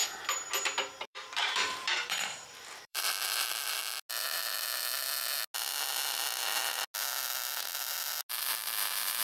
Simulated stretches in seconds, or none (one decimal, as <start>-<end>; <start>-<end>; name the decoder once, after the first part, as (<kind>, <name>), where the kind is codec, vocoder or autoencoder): 1.0-3.8 (vocoder, BigVGAN v2); 8.3-9.2